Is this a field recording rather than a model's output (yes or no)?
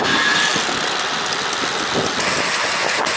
yes